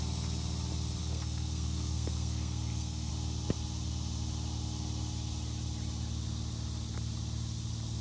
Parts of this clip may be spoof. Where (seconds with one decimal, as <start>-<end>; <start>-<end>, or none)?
1.0-3.1